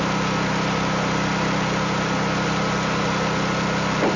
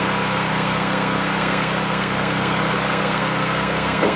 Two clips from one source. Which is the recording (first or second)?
first